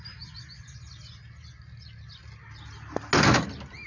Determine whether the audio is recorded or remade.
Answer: recorded